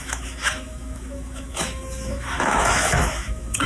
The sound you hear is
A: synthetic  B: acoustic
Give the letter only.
A